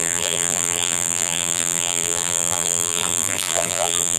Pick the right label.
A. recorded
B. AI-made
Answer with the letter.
B